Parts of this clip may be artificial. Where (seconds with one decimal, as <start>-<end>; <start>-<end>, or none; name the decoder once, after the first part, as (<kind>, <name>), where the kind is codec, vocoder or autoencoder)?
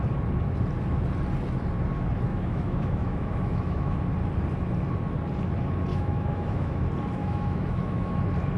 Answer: 2.3-4.0 (autoencoder, DAC-VAE); 5.9-6.8; 7.2-8.2